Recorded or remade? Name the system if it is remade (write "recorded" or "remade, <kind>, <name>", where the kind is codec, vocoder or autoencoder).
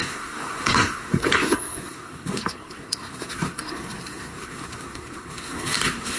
remade, codec, SNAC